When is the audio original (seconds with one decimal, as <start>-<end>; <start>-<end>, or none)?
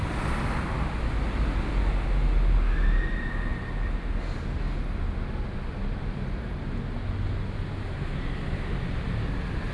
0.0-9.7